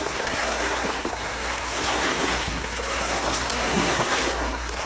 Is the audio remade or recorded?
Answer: remade